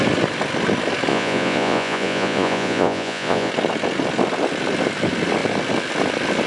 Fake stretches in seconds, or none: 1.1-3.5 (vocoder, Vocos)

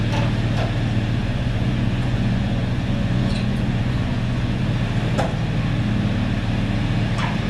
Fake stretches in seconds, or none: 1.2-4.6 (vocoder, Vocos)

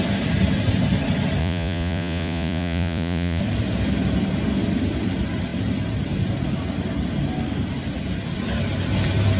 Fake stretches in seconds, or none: 1.4-3.4 (vocoder, Vocos)